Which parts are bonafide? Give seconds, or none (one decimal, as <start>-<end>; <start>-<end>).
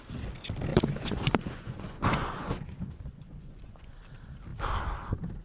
0.0-0.7; 3.9-5.4